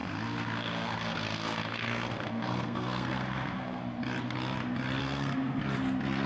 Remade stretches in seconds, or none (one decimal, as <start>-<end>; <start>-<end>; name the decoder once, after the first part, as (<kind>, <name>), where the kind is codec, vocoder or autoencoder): 0.0-3.8 (codec, SNAC); 5.0-5.6